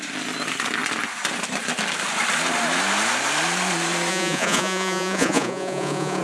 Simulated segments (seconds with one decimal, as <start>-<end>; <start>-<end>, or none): 4.1-6.2